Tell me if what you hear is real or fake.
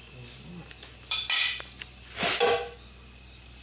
real